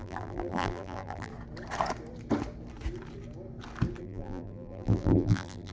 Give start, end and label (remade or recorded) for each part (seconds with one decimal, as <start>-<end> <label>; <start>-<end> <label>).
0.0-1.3 remade; 1.3-4.0 recorded; 4.0-5.7 remade